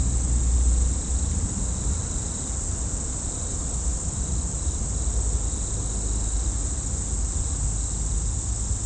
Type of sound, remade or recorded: recorded